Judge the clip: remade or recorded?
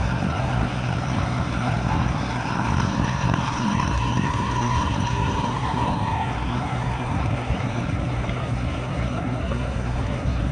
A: remade